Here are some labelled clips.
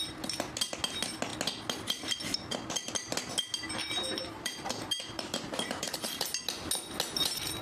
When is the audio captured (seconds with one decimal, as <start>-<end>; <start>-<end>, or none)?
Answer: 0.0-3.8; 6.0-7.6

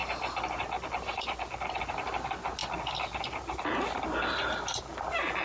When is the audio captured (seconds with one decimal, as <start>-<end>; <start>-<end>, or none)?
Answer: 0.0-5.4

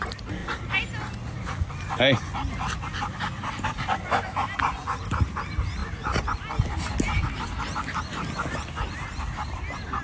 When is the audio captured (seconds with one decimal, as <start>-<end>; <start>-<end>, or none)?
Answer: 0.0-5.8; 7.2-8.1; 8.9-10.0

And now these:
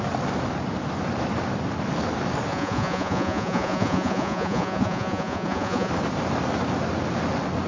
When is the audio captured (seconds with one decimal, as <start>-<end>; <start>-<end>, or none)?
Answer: 0.0-2.5; 5.9-7.7

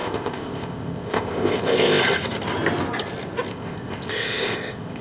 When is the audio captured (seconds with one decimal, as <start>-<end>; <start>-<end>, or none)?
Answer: 2.0-3.5

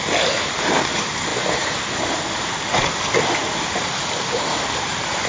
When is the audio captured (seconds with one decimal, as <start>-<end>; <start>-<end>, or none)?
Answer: 0.0-5.3